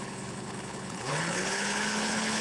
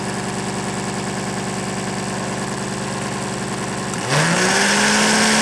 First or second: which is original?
second